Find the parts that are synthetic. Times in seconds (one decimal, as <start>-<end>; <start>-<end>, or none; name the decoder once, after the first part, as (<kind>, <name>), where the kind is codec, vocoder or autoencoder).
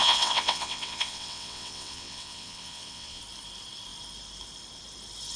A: 0.0-3.2 (vocoder, WaveNeXt)